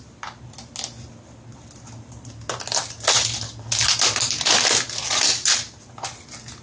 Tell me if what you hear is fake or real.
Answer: real